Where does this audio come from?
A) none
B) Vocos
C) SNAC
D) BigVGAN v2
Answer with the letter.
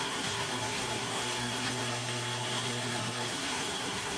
C